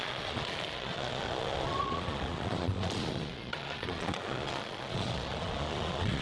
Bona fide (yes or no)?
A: no